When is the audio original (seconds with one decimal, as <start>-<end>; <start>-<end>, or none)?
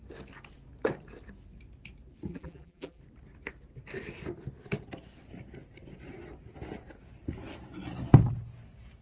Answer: 0.0-2.3; 3.0-9.0